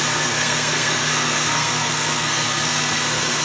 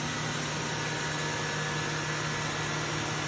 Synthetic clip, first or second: first